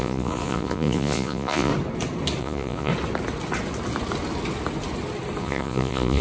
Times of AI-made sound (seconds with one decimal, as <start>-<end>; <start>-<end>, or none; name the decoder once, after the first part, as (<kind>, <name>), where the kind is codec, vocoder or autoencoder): 0.0-1.7 (vocoder, Vocos); 2.4-2.9; 5.4-6.2